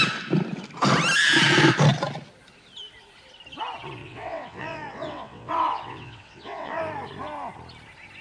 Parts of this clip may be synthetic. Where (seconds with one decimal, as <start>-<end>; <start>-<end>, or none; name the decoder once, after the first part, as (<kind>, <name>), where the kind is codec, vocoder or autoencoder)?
4.0-6.8 (vocoder, WaveNeXt)